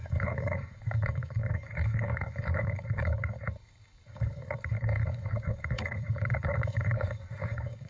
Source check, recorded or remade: remade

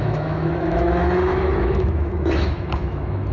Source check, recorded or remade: remade